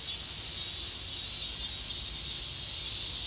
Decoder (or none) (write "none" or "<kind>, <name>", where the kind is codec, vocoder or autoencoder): none